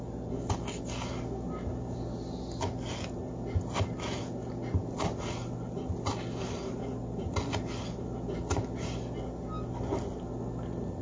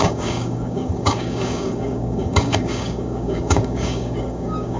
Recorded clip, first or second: first